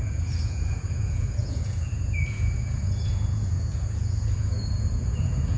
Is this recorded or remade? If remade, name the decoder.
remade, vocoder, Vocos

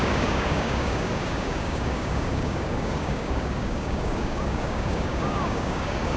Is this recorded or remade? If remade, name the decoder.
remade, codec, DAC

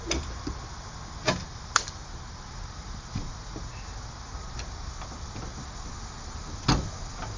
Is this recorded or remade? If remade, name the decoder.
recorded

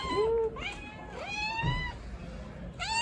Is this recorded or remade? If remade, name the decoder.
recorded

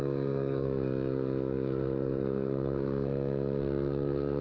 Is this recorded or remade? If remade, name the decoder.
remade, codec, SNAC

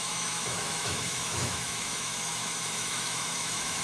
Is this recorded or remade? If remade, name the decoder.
remade, autoencoder, DAC-VAE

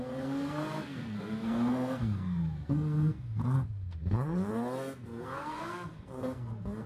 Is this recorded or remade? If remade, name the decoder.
remade, codec, SNAC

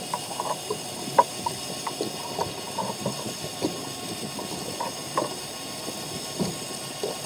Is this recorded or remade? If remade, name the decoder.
recorded